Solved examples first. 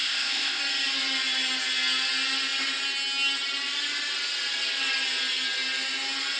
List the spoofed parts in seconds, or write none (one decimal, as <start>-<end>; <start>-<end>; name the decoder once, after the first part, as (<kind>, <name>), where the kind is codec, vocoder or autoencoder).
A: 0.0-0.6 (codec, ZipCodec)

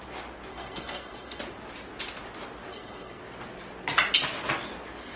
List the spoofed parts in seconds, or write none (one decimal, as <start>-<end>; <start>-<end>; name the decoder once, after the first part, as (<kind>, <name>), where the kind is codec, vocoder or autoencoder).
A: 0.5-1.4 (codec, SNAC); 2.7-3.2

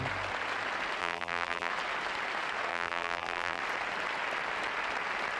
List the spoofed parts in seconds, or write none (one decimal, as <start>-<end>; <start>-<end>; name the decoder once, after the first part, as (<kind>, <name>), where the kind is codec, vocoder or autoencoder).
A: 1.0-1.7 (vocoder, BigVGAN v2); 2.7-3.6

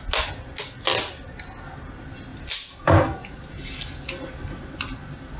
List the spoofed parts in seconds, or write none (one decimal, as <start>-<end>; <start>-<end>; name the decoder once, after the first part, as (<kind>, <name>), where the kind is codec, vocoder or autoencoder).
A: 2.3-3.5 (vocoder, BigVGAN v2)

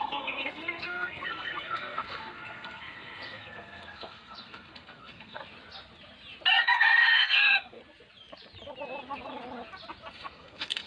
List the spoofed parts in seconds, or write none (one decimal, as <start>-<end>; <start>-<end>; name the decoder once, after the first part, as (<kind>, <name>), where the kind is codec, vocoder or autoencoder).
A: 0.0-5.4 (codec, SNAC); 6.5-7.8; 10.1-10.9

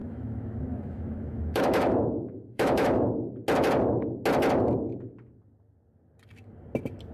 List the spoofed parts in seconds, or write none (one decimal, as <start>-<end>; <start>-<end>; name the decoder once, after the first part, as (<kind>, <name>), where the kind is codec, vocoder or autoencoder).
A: 0.0-3.1 (autoencoder, DAC-VAE)